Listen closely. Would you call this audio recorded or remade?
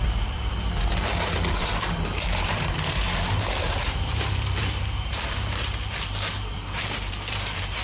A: remade